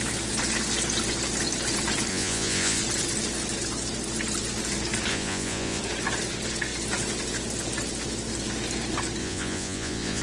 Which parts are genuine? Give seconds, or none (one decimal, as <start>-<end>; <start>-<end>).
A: 0.0-2.1; 2.8-5.1; 5.8-9.2